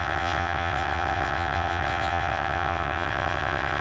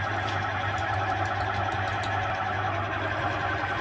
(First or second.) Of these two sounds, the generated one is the first